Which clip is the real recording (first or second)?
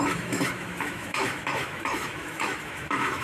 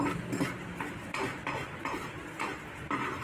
second